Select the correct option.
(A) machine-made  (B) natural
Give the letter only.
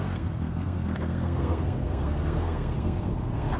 A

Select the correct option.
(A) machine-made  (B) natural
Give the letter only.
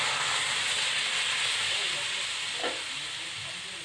B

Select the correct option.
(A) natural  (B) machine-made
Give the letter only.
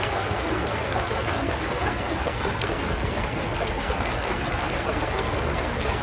B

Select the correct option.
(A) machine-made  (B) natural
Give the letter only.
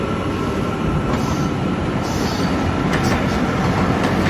B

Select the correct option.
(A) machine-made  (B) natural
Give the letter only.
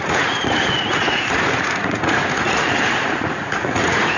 A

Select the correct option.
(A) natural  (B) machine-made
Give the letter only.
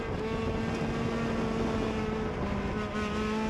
A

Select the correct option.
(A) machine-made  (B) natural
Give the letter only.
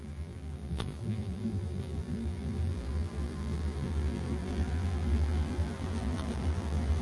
A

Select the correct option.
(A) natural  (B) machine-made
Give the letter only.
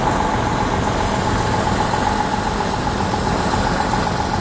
A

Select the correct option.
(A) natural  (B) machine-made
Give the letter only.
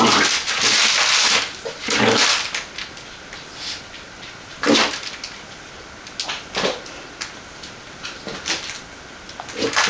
A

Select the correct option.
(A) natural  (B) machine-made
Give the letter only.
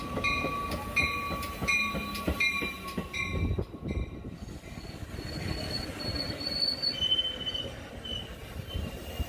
A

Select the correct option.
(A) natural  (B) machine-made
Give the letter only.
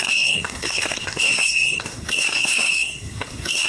B